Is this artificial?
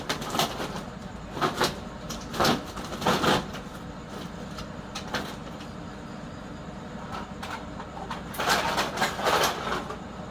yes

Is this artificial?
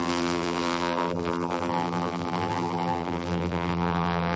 yes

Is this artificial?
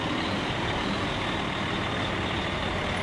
no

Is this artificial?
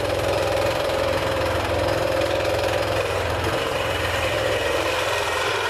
yes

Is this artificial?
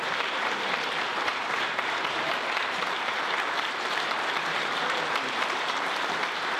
yes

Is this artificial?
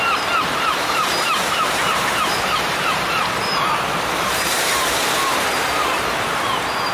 yes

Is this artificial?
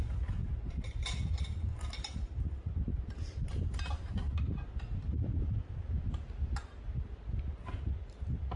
no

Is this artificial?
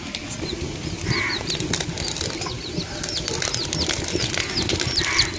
no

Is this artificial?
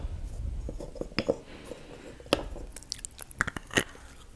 no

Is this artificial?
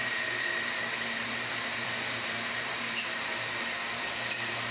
yes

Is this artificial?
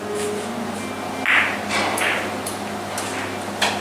no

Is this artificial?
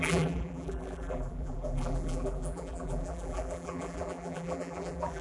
yes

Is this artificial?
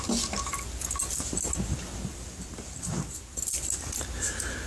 no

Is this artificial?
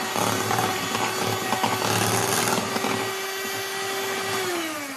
no